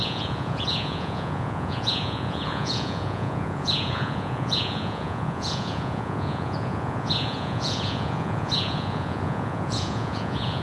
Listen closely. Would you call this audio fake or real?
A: fake